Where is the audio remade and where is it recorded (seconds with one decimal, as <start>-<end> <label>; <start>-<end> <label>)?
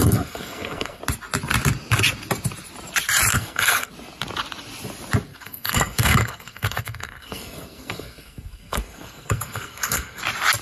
0.0-1.0 remade; 1.0-3.3 recorded; 3.3-3.9 remade; 3.9-5.3 recorded; 5.3-10.2 remade; 10.2-10.6 recorded